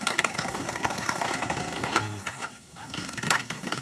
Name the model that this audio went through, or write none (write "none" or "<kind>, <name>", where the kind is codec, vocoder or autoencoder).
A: codec, SNAC